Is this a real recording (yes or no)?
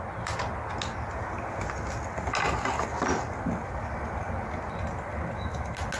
yes